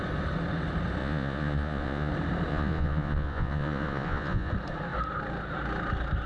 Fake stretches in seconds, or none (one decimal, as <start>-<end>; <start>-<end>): 1.0-2.1; 2.5-4.5